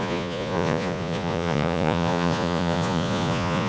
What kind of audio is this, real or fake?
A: fake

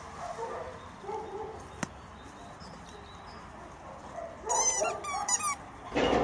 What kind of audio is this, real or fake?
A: real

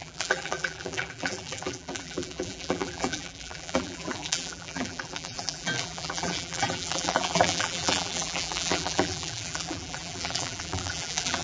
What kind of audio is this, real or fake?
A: fake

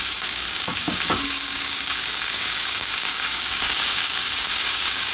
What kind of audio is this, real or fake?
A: fake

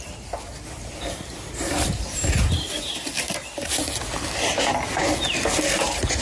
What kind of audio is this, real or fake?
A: real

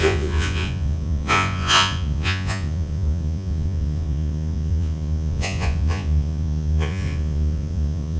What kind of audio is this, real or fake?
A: fake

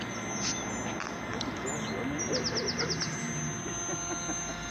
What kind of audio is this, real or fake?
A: real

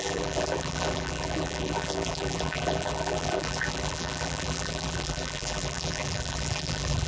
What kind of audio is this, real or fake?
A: fake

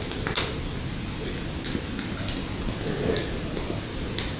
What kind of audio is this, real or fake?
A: real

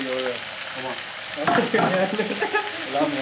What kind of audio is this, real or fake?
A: real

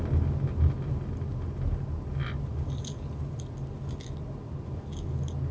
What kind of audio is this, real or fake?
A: real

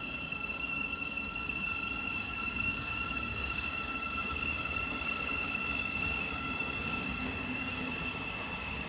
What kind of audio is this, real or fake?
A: fake